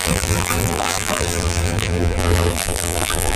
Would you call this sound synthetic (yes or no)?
yes